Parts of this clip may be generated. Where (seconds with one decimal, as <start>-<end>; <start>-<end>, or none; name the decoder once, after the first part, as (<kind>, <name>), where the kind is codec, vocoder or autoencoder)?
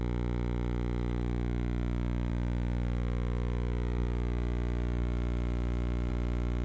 2.3-6.1 (vocoder, BigVGAN v2)